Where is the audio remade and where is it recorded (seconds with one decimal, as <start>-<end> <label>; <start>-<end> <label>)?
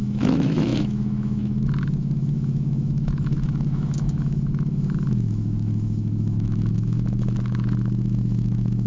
0.0-8.9 remade